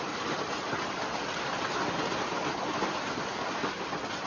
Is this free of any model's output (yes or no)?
yes